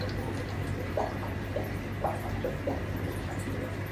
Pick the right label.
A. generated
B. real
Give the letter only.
B